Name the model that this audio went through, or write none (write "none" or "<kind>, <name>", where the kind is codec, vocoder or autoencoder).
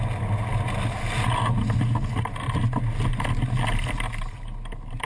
none